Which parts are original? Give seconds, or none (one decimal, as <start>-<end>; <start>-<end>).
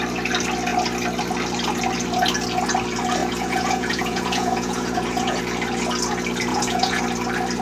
0.0-3.2; 5.4-6.5; 7.0-7.6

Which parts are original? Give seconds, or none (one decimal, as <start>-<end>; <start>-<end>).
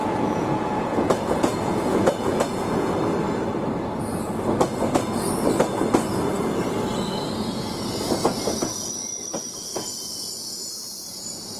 2.9-11.6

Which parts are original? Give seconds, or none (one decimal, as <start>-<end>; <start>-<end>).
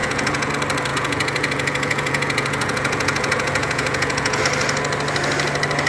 0.5-0.9; 4.4-5.9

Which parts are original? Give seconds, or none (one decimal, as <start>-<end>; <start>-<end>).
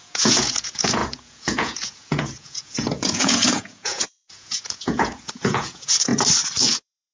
6.1-6.6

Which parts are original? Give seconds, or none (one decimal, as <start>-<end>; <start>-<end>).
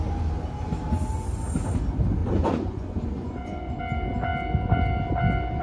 0.0-2.2; 3.8-5.6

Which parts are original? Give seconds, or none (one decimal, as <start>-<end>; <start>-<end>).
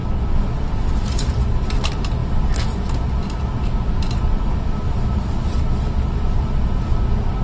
0.0-7.4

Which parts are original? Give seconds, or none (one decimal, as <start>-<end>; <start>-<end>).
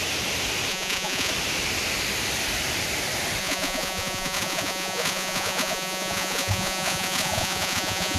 0.0-0.7; 1.3-3.4